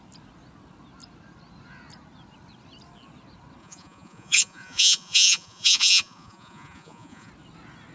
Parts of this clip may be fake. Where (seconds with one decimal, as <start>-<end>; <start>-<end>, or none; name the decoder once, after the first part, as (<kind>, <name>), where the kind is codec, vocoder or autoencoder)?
3.6-7.3 (vocoder, Vocos)